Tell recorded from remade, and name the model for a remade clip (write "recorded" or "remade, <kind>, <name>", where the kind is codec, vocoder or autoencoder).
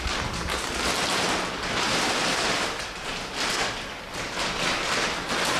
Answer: recorded